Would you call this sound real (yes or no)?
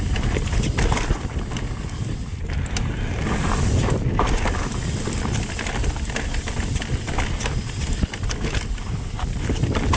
yes